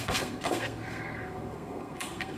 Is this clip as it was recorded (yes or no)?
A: no